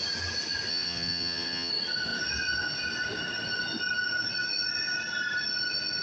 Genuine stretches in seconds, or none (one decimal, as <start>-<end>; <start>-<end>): 0.0-0.7; 1.7-6.0